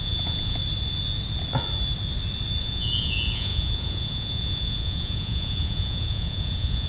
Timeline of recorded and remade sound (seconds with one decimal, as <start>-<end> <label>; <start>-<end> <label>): 0.0-0.6 remade; 0.6-2.6 recorded; 2.6-6.9 remade